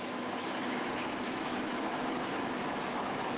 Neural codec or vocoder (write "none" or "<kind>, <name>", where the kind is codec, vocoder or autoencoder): autoencoder, DAC-VAE